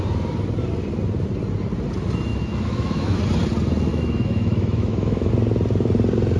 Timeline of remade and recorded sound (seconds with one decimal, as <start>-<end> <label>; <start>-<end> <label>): 0.0-2.3 recorded; 2.3-3.2 remade; 3.2-3.9 recorded; 3.9-5.3 remade; 5.3-6.4 recorded